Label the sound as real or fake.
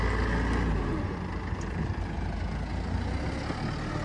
real